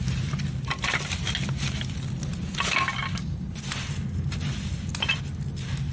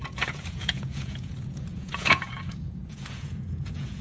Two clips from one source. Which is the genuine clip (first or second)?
first